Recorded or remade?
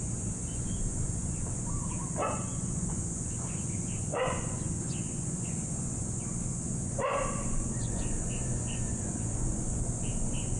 remade